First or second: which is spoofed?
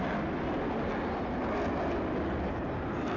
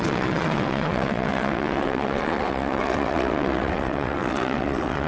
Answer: second